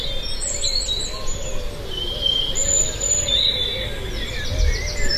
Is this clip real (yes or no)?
yes